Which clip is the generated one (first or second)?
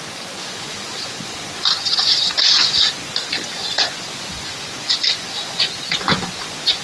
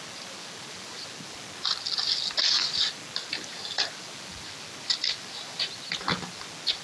first